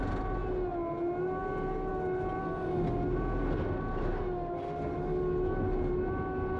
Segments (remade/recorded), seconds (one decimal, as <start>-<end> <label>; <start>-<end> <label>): 0.0-6.6 recorded